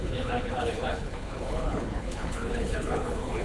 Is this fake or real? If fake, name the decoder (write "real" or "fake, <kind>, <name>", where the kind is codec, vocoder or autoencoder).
fake, codec, HILCodec